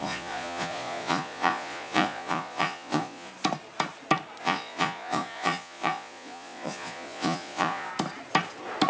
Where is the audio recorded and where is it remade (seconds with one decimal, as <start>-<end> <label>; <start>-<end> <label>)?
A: 0.0-3.3 remade; 3.3-4.4 recorded; 4.4-7.9 remade; 7.9-8.9 recorded